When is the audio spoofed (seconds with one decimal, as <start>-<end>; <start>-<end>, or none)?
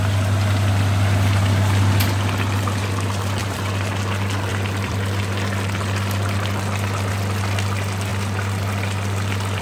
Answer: 3.4-4.0; 4.5-5.2